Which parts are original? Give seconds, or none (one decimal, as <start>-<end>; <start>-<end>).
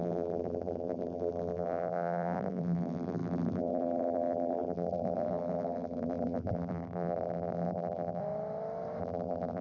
8.2-9.0